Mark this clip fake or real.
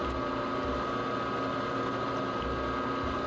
real